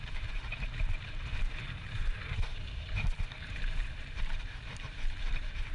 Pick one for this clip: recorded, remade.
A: remade